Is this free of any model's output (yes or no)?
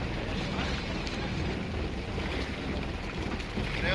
yes